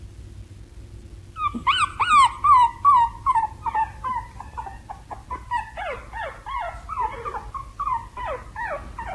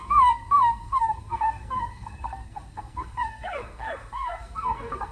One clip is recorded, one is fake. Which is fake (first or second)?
second